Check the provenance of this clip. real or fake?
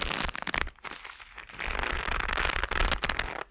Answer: real